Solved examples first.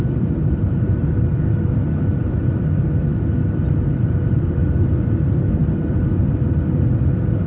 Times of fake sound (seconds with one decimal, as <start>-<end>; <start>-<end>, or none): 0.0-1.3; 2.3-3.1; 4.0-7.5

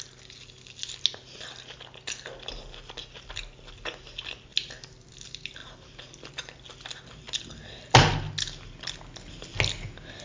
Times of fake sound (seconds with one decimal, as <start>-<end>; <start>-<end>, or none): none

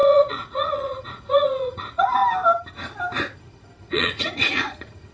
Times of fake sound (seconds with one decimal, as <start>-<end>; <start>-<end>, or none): 0.0-2.2; 3.8-5.1

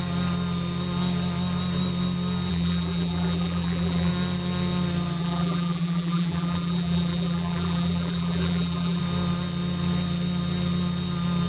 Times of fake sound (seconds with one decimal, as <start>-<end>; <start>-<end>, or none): 2.5-4.1; 5.2-9.0

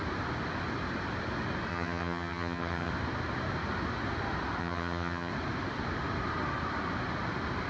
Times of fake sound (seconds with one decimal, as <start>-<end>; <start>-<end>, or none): 1.7-2.9; 4.6-5.3